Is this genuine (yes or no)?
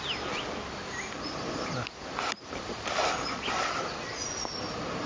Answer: yes